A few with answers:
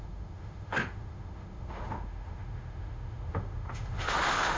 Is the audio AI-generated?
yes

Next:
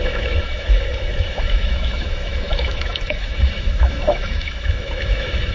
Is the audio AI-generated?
yes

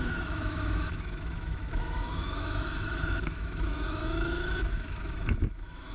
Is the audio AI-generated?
yes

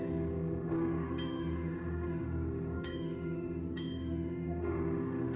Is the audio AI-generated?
yes